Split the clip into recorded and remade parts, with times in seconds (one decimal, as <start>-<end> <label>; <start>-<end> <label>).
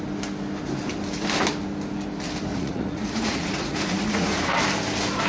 0.0-2.5 recorded; 2.5-4.5 remade; 4.5-5.3 recorded